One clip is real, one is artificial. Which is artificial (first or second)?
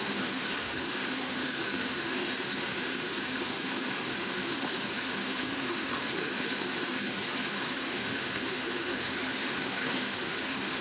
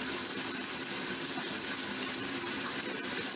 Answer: first